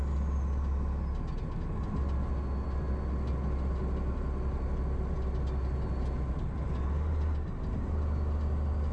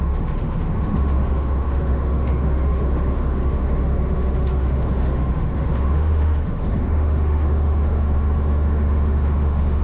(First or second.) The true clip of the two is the first